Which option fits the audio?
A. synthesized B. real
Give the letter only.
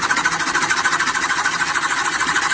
B